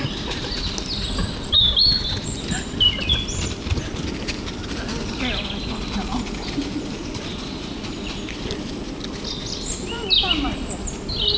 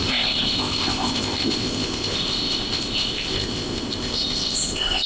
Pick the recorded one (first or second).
first